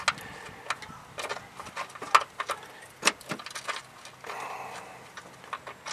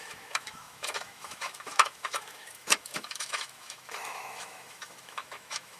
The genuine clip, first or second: first